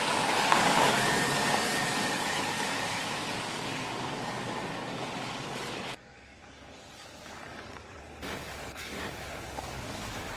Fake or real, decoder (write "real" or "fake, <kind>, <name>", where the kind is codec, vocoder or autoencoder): fake, codec, DAC